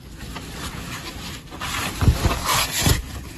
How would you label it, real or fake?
real